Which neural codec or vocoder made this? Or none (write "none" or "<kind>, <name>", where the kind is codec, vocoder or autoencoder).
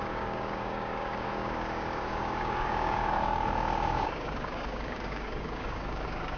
codec, DAC